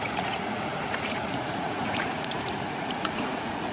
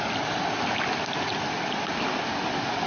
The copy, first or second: first